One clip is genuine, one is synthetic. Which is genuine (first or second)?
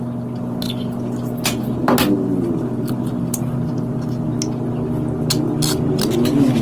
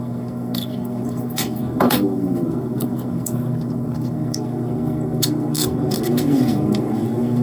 first